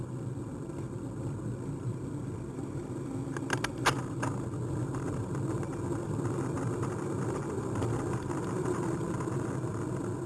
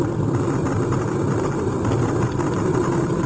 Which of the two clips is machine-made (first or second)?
second